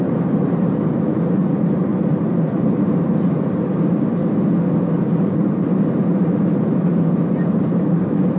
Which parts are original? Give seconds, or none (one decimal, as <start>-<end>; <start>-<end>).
4.2-5.2

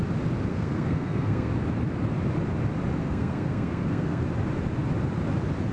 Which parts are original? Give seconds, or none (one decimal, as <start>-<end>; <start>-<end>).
0.0-0.5; 1.5-3.0; 4.2-5.7